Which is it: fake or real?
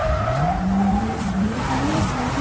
fake